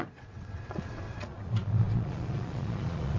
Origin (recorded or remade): remade